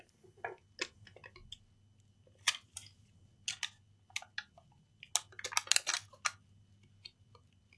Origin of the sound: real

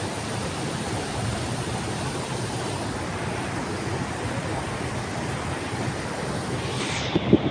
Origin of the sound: real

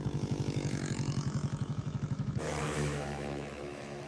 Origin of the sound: fake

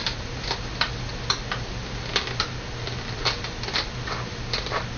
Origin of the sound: real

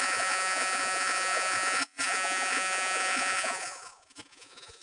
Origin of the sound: fake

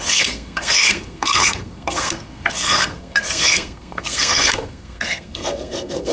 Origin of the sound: fake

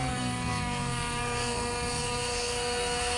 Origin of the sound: fake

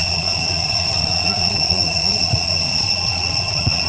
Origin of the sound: fake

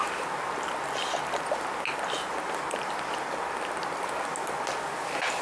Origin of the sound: real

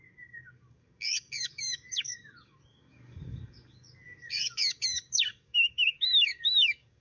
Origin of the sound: fake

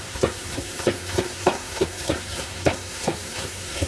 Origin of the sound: fake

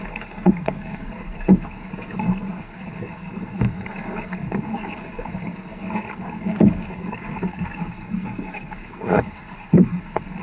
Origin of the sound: fake